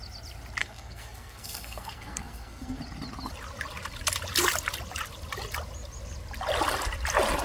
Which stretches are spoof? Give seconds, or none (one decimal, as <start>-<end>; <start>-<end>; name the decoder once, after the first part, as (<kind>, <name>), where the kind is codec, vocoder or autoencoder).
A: 0.6-2.8 (codec, SNAC)